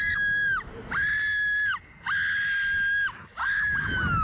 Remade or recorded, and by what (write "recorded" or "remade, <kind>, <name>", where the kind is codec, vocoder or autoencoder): recorded